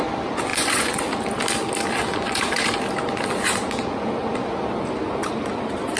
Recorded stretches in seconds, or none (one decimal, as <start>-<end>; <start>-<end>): 0.0-0.5; 1.0-2.1; 2.7-6.0